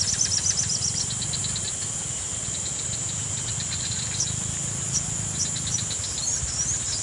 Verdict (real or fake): real